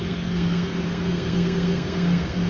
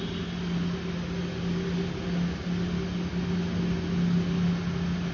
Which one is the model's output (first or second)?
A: first